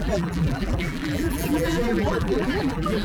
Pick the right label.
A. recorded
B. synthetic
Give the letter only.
B